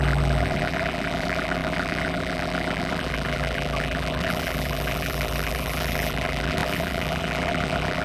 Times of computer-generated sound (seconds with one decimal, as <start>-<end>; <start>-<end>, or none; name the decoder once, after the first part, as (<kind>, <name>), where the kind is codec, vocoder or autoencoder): 0.0-8.0 (vocoder, BigVGAN v2)